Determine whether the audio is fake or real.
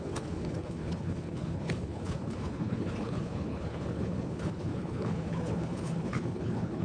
fake